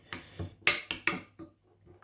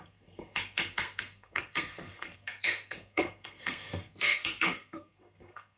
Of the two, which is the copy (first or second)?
second